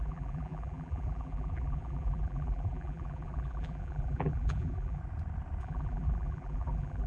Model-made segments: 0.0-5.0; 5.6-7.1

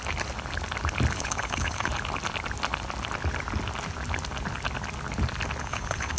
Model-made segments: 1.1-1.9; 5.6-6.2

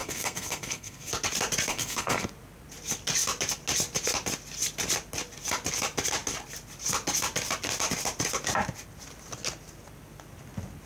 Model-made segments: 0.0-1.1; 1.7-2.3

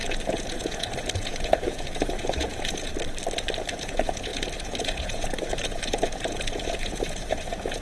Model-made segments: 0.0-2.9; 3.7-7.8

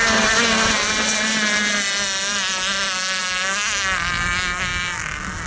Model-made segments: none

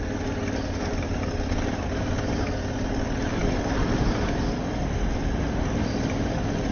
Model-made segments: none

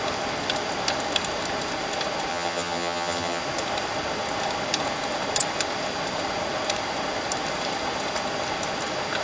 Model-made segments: 2.3-3.4

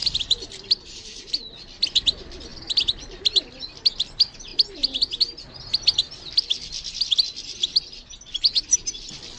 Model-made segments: 0.0-1.4